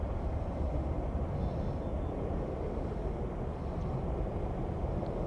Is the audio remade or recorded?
recorded